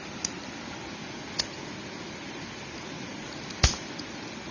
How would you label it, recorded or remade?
recorded